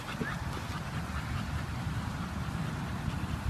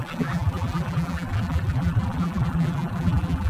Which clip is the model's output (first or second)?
second